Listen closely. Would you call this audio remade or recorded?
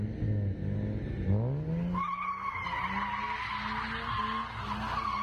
recorded